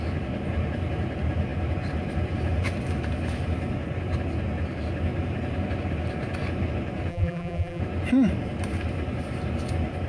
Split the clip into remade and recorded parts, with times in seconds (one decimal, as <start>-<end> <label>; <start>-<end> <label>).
0.0-7.1 recorded; 7.1-7.8 remade; 7.8-10.1 recorded